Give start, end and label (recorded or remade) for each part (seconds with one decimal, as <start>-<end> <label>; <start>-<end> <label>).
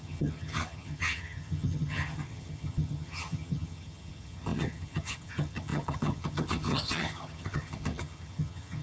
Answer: 0.0-8.8 remade